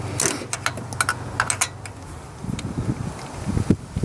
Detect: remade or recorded recorded